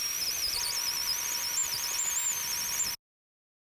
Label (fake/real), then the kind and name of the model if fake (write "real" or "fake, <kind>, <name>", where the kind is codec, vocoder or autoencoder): real